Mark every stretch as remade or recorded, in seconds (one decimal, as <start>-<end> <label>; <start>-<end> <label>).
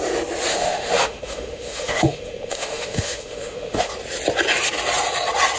0.0-0.5 recorded; 0.5-3.9 remade; 3.9-5.6 recorded